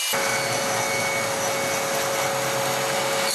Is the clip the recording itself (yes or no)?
yes